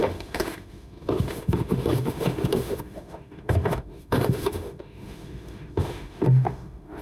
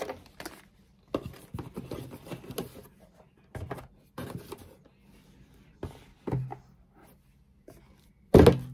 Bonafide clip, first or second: second